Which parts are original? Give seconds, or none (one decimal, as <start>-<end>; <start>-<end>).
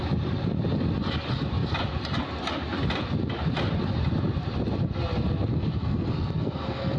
0.0-5.5